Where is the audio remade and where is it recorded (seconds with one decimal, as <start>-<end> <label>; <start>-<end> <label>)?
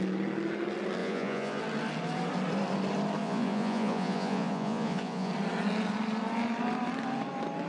0.0-1.0 recorded; 1.0-1.6 remade; 1.6-3.2 recorded; 3.2-5.3 remade; 5.3-7.7 recorded